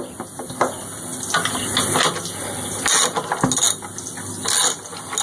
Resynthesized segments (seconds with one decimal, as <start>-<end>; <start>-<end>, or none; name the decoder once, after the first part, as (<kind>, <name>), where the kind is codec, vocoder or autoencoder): none